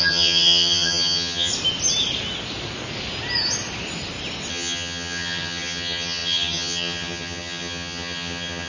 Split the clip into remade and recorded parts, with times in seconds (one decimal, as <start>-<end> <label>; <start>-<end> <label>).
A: 0.0-1.5 remade; 1.5-4.5 recorded; 4.5-8.7 remade